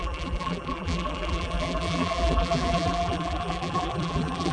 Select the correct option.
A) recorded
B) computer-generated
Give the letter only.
B